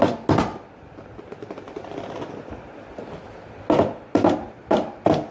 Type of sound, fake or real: real